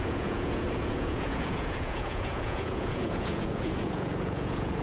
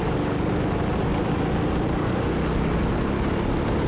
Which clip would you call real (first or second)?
second